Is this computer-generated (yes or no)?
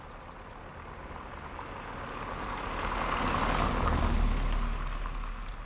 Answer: no